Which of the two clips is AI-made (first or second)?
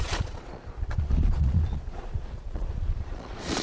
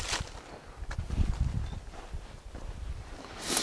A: first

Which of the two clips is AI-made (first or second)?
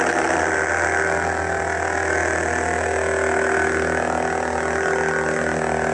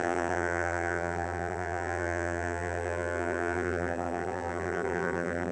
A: second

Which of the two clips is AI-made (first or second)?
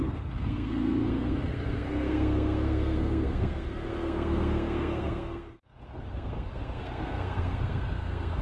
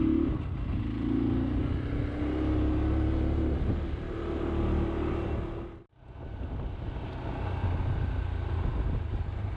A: first